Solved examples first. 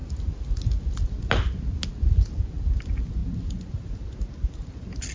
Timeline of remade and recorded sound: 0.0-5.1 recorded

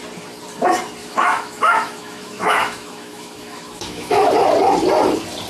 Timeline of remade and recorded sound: 0.0-1.0 recorded; 1.0-4.3 remade; 4.3-5.5 recorded

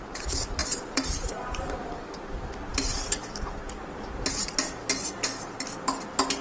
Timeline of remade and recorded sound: 0.0-0.6 recorded; 0.6-2.0 remade; 2.0-2.7 recorded; 2.7-3.4 remade; 3.4-6.4 recorded

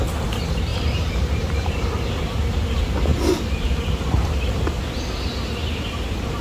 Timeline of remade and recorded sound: 0.0-0.7 recorded; 0.7-2.1 remade; 2.1-5.6 recorded; 5.6-6.4 remade